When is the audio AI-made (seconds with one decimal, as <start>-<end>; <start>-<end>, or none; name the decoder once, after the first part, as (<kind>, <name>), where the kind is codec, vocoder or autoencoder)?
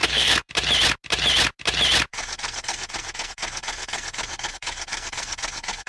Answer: 0.0-0.5 (codec, SNAC); 2.1-5.9